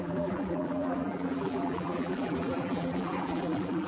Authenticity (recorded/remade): remade